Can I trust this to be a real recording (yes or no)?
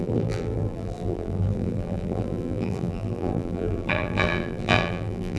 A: no